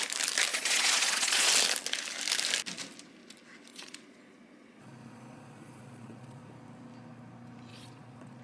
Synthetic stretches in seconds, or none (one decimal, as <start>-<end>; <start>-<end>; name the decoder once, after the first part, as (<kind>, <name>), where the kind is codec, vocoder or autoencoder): 0.5-1.5 (vocoder, Vocos); 3.7-6.5; 7.7-8.4